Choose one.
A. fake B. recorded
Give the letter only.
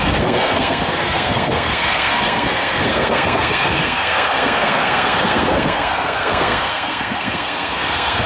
A